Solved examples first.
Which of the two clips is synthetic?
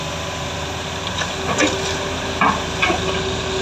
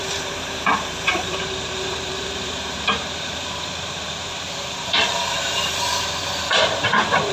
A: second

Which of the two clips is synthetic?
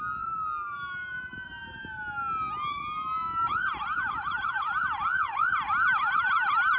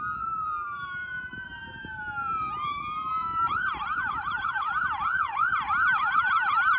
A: second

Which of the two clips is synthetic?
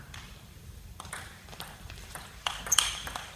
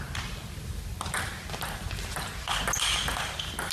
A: first